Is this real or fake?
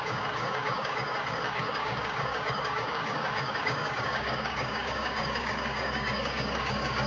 fake